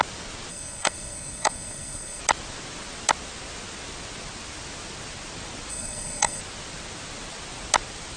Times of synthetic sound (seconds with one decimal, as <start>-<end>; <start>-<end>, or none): 0.5-2.2; 5.7-6.4